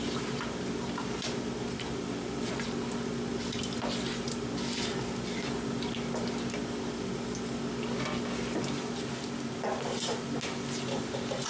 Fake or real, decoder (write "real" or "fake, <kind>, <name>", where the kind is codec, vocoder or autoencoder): real